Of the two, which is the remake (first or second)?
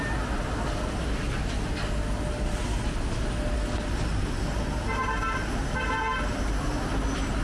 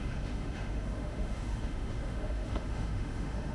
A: second